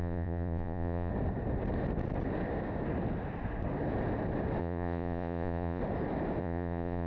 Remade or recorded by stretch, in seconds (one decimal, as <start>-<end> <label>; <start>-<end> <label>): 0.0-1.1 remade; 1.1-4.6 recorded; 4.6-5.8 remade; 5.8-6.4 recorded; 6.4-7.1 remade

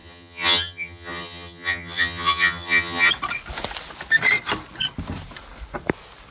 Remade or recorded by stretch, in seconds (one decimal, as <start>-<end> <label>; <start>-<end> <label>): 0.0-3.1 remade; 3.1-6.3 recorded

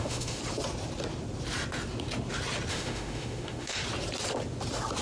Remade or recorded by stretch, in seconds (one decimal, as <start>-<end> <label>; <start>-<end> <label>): 0.0-0.4 remade; 0.4-2.7 recorded; 2.7-3.8 remade; 3.8-5.0 recorded